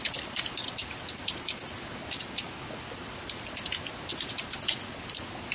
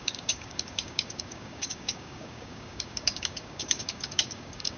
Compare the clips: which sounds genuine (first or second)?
first